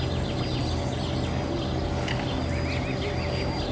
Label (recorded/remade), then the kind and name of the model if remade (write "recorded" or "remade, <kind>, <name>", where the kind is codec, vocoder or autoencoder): recorded